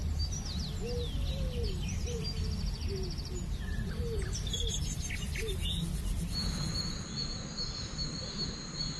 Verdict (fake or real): real